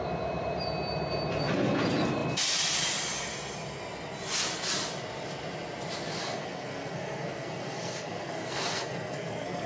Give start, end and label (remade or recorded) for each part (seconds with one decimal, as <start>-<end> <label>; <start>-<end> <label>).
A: 0.0-6.2 recorded; 6.2-9.7 remade